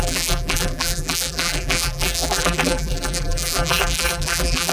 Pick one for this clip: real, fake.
fake